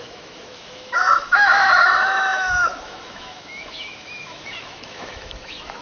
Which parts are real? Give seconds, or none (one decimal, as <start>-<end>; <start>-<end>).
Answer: none